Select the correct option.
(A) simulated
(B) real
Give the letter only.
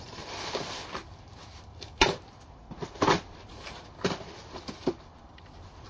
A